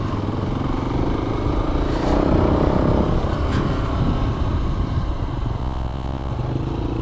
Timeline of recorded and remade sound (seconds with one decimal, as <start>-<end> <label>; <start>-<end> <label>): 0.0-5.6 recorded; 5.6-6.3 remade; 6.3-7.0 recorded